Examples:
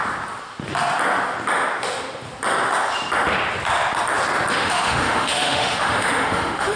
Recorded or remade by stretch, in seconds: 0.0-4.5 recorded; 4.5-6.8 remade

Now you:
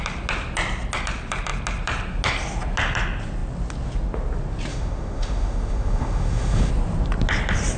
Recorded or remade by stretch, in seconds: 0.0-4.7 recorded; 4.7-6.7 remade; 6.7-7.8 recorded

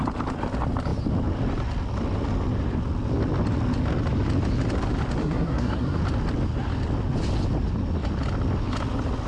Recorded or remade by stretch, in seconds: 0.0-5.2 recorded; 5.2-6.0 remade; 6.0-9.3 recorded